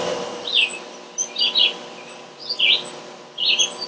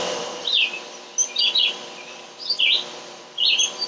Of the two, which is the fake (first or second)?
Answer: second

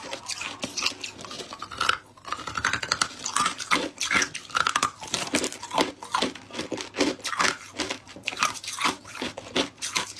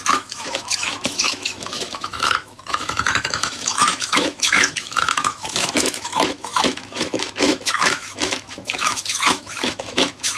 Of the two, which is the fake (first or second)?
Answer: second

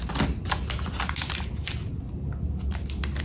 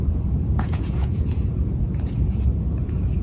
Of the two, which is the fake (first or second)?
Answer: second